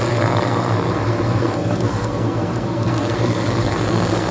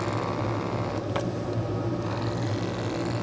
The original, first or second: second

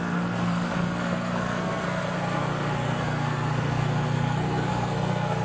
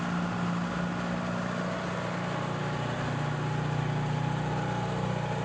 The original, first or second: second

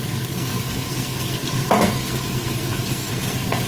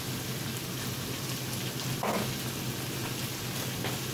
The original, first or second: second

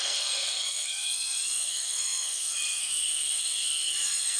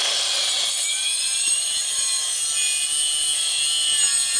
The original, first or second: second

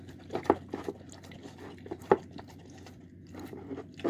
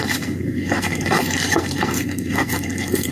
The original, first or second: first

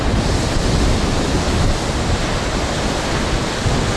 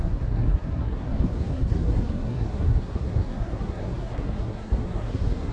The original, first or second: first